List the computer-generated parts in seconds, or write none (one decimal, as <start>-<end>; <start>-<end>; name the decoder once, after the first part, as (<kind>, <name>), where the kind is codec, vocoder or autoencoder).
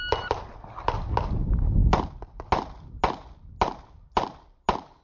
none